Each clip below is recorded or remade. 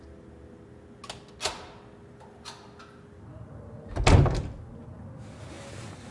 recorded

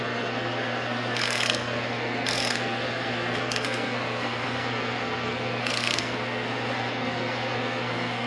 remade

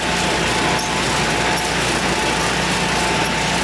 recorded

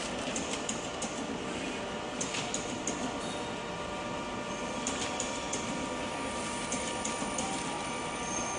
recorded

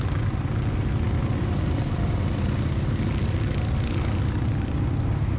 recorded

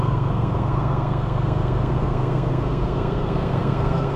remade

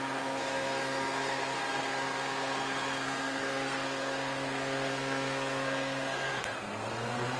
remade